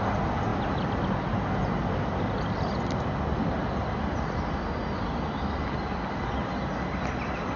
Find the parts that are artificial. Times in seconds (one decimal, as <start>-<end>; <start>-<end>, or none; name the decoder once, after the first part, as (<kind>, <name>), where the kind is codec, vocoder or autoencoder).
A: none